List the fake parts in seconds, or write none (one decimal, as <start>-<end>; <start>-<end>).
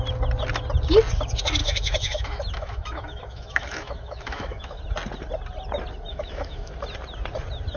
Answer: 1.6-4.8; 6.1-6.7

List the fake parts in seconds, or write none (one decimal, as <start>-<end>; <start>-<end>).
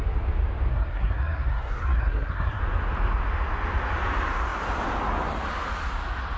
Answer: 0.7-2.6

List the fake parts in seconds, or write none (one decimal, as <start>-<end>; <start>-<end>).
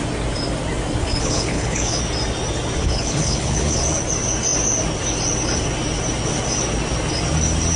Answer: 1.0-2.0; 2.8-3.8